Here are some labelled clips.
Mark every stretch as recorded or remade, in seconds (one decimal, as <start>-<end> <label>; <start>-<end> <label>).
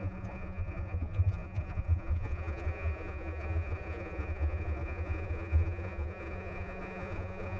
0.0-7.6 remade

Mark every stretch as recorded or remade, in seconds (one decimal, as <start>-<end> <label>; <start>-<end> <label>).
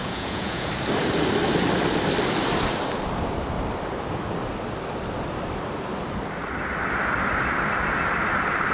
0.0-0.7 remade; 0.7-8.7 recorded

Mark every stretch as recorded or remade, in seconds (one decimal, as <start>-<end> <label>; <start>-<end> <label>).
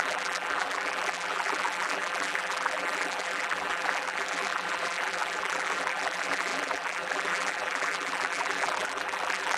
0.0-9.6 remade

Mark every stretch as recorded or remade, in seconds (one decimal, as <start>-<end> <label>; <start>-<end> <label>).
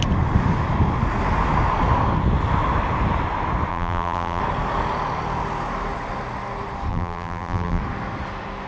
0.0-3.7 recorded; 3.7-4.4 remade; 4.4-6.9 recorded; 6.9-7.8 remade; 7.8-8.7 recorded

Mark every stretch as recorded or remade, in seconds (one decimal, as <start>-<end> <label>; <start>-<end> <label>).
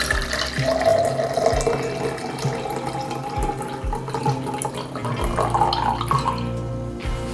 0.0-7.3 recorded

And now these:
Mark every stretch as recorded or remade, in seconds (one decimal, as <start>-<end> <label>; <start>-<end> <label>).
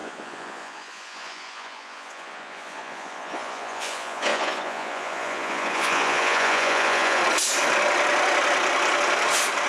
0.0-7.2 remade; 7.2-9.7 recorded